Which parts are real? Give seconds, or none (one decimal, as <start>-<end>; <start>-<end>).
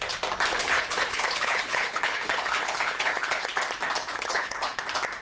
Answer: 0.0-0.5; 3.6-4.0; 4.8-5.2